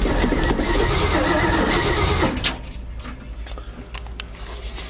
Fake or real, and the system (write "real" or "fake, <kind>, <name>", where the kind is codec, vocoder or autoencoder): real